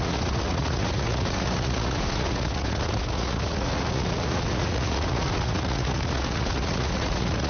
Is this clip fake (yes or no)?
yes